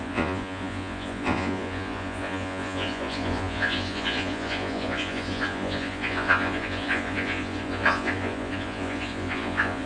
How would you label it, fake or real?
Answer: fake